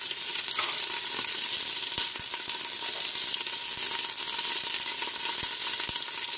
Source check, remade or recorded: recorded